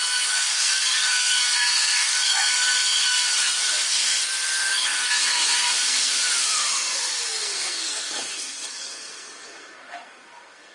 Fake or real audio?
fake